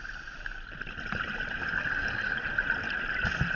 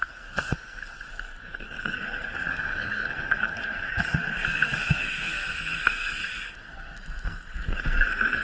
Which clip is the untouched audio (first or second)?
first